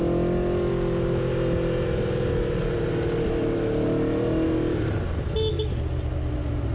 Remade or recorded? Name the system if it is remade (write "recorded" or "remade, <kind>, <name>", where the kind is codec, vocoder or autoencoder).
recorded